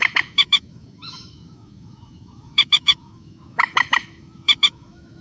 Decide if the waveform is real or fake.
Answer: fake